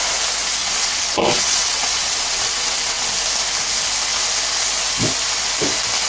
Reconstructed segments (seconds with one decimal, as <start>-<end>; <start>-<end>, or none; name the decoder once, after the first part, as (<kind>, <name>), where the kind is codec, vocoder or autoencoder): 0.6-3.1 (vocoder, WaveNeXt)